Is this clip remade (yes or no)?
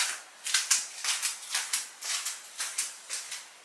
no